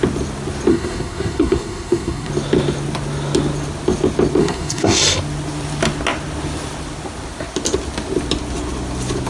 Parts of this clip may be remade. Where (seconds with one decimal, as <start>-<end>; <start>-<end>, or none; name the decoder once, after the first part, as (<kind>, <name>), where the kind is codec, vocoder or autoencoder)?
0.7-2.3 (codec, SNAC); 4.4-5.0